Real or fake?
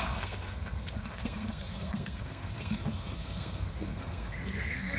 fake